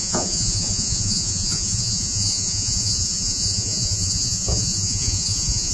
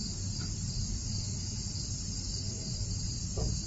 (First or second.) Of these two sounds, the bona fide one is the second